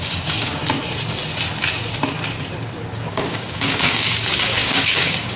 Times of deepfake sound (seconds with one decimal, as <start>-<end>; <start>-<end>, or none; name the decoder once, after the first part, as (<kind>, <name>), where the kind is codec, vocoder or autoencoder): 0.0-0.6 (codec, DAC); 3.1-5.4